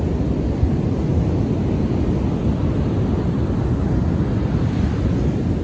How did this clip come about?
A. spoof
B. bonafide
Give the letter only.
B